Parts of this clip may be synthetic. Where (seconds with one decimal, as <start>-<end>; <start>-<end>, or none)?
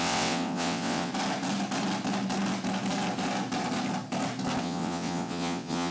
0.0-1.1; 4.6-5.9